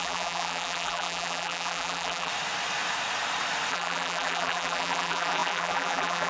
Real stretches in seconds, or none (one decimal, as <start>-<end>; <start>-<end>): 2.3-3.7

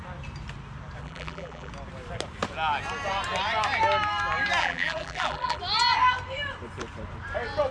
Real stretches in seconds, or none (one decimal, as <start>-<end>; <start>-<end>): 0.0-1.0; 1.7-4.6; 5.6-7.7

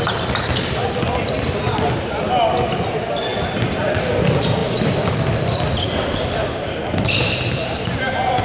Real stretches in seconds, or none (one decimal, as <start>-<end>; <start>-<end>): 0.0-0.8; 1.5-4.6